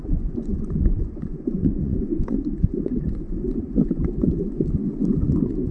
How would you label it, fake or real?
fake